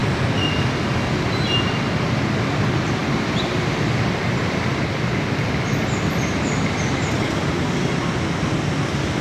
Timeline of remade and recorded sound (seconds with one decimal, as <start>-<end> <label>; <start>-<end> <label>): 0.0-9.2 recorded